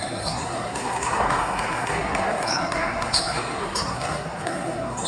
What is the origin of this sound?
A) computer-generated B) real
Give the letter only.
A